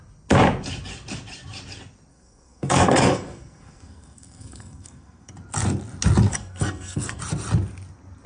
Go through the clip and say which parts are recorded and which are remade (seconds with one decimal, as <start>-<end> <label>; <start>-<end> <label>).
0.0-2.1 recorded; 2.1-5.3 remade; 5.3-6.3 recorded; 6.3-7.2 remade; 7.2-8.3 recorded